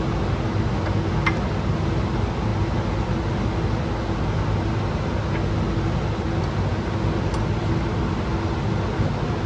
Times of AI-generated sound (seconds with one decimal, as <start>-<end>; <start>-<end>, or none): none

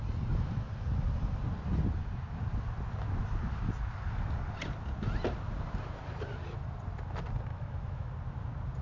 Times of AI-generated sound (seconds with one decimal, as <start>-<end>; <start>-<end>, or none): 7.5-8.1